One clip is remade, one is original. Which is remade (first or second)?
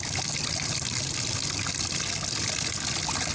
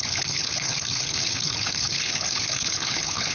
second